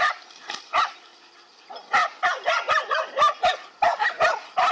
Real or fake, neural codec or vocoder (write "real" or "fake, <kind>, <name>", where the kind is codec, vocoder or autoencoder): real